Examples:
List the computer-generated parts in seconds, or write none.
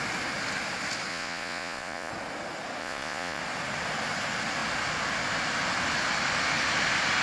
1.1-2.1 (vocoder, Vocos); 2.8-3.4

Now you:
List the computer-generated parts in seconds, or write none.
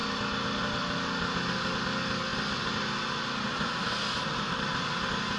none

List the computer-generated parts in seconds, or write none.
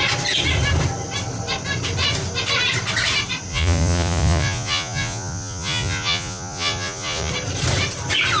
3.5-7.3 (vocoder, Vocos)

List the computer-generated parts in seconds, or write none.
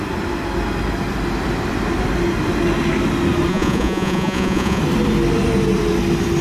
3.5-4.8 (vocoder, Vocos)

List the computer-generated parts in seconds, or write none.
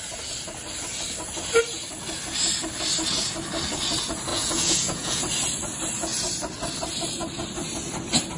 4.3-5.2 (vocoder, Vocos)